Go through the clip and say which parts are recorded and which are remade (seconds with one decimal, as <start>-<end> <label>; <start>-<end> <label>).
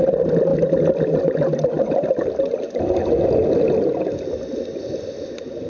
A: 0.0-5.7 recorded